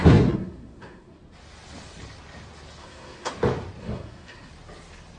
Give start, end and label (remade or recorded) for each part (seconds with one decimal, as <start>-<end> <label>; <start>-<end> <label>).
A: 0.0-1.2 remade; 1.2-2.8 recorded; 2.8-3.3 remade; 3.3-3.8 recorded; 3.8-4.5 remade; 4.5-5.2 recorded